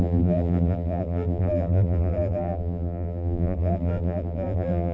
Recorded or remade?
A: remade